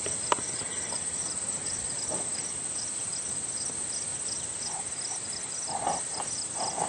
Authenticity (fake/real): real